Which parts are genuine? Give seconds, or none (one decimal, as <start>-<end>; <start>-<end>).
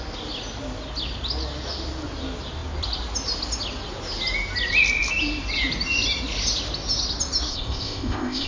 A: 0.0-7.5